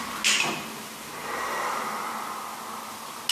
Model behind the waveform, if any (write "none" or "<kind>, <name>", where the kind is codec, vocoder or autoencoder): none